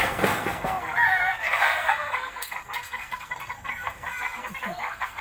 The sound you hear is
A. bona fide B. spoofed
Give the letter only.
B